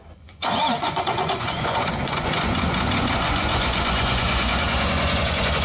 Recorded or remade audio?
remade